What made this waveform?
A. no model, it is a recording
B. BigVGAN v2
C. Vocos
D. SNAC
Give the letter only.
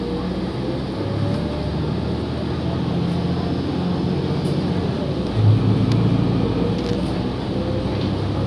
A